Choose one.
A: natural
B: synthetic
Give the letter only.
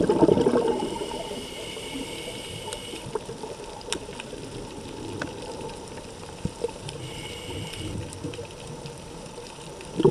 B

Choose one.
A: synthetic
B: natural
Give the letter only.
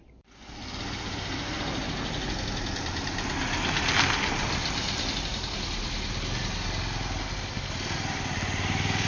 B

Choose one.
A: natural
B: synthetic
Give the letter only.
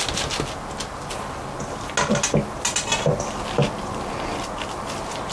A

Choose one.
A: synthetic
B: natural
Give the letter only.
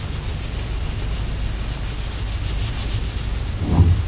B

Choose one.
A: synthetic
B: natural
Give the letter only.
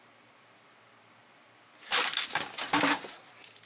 A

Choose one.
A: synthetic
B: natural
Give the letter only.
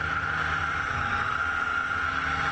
B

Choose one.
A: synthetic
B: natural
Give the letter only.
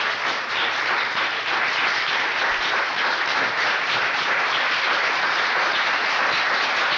A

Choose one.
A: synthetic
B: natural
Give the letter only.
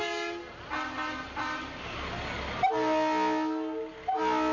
B